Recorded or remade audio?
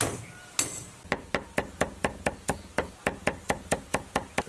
recorded